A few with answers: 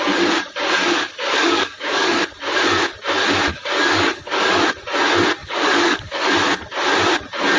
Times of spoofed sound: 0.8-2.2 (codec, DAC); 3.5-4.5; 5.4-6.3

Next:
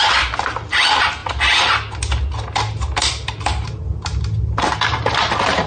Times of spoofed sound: none

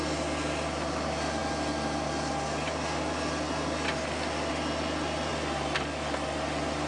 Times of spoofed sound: none

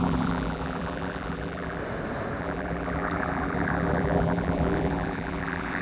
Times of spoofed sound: 0.0-1.8 (vocoder, BigVGAN v2); 2.4-5.8

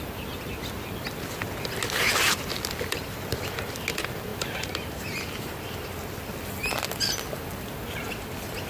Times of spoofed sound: 4.3-5.6 (vocoder, BigVGAN v2)

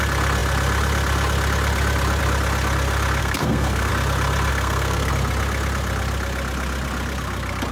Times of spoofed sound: 3.2-3.9 (codec, SNAC); 4.5-5.1